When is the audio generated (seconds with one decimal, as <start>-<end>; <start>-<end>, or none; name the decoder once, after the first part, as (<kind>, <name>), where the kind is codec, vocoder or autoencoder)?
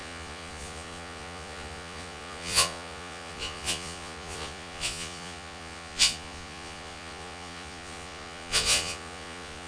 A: 0.0-9.7 (vocoder, Vocos)